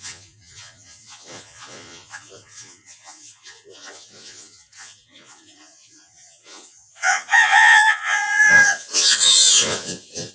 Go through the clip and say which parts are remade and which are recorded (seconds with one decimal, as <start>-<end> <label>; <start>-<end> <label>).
0.0-10.3 remade